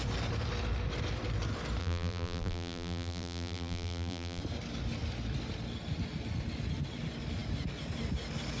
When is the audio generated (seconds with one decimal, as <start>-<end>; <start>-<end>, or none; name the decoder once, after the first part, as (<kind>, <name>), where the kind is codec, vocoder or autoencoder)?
1.8-4.4 (vocoder, BigVGAN v2)